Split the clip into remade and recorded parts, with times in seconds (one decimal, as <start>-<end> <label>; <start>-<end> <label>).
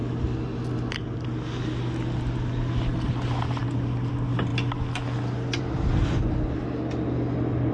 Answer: 0.0-7.7 recorded